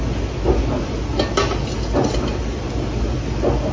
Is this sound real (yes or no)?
yes